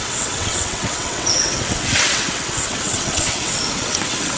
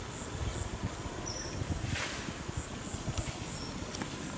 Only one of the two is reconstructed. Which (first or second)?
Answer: first